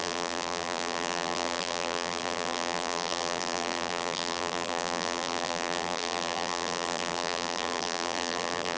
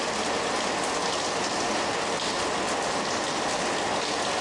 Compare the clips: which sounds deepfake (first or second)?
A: first